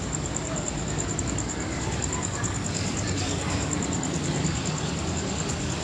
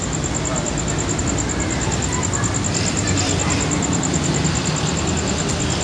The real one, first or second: second